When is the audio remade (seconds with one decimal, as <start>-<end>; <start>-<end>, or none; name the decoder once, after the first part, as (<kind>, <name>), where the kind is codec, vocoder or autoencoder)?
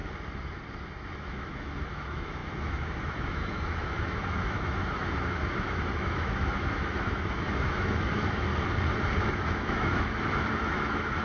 0.9-8.5 (autoencoder, DAC-VAE); 9.2-11.2